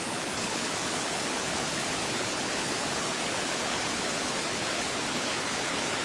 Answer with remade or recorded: remade